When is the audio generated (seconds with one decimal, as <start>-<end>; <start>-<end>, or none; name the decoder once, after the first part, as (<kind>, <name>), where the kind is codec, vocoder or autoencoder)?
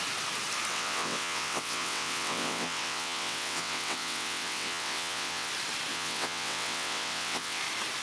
0.7-5.5 (vocoder, WaveNeXt); 5.9-7.6